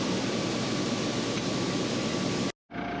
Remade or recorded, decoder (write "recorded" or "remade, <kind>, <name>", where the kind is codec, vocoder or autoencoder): recorded